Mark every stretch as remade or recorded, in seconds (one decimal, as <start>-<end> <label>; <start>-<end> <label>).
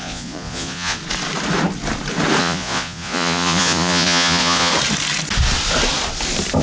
0.0-1.0 remade; 1.0-2.4 recorded; 2.4-4.7 remade; 4.7-6.6 recorded